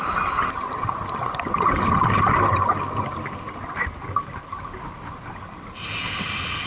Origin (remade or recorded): recorded